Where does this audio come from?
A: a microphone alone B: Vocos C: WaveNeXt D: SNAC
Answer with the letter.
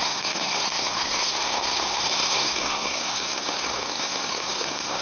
D